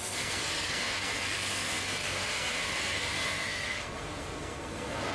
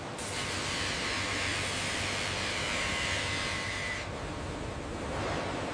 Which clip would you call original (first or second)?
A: second